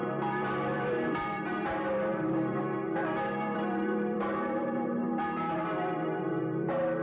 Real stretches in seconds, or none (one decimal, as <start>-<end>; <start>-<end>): none